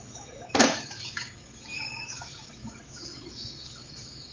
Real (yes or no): no